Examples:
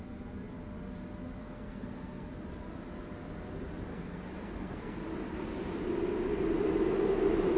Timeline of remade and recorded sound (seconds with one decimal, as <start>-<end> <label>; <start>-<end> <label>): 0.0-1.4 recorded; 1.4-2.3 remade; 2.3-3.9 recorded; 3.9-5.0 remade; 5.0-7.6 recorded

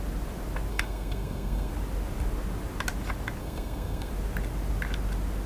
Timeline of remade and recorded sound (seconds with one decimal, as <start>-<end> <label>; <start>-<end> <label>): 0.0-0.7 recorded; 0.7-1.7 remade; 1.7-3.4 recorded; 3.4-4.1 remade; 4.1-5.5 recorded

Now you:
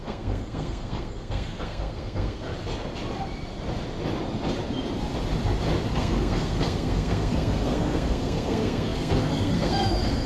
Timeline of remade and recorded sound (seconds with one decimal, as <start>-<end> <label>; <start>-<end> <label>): 0.0-2.5 remade; 2.5-5.9 recorded; 5.9-10.3 remade

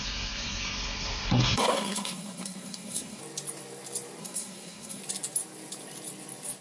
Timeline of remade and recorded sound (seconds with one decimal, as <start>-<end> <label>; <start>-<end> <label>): 0.0-3.2 remade; 3.2-4.2 recorded; 4.2-5.0 remade; 5.0-6.6 recorded